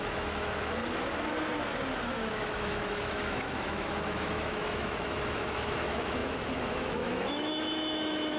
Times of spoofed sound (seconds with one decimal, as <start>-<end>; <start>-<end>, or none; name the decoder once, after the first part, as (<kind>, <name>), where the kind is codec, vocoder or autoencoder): 0.0-0.8 (autoencoder, DAC-VAE); 2.0-8.4